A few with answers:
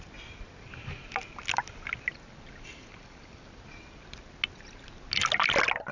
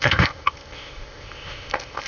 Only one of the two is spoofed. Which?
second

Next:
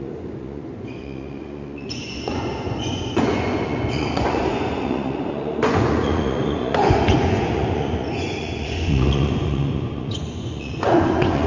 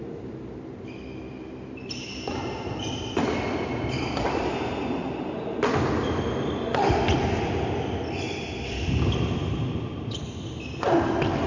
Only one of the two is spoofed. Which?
first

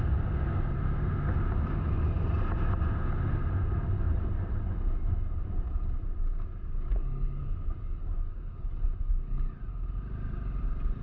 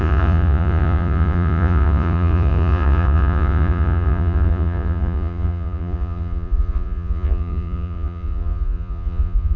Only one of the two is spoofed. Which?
second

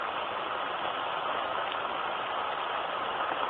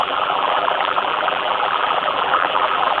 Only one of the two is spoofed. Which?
second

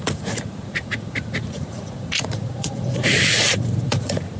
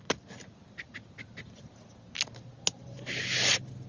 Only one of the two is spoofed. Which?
first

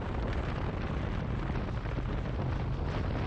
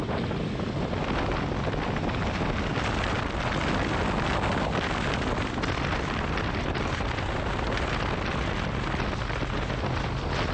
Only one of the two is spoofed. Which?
first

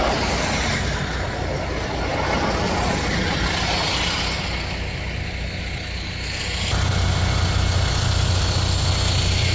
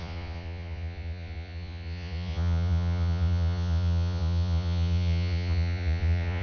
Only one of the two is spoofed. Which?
second